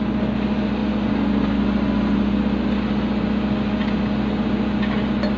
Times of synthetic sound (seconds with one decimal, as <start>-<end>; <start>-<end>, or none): none